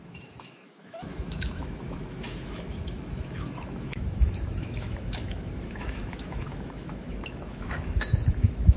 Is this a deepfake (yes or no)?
yes